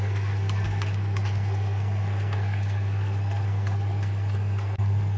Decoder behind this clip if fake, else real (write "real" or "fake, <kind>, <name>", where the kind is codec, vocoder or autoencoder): fake, codec, SNAC